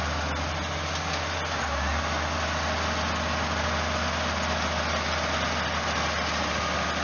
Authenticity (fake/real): real